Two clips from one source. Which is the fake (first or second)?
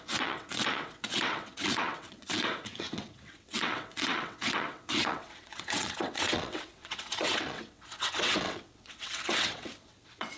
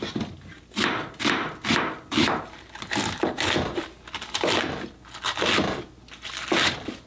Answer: first